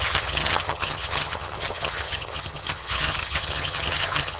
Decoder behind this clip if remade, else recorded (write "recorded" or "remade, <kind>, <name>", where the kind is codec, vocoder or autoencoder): remade, vocoder, HiFi-GAN